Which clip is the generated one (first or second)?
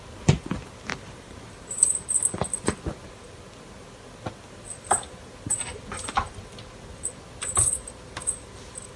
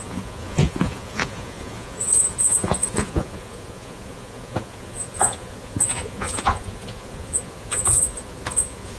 second